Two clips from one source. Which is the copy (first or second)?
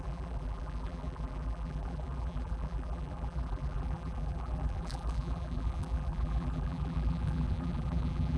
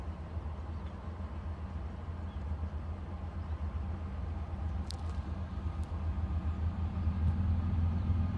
first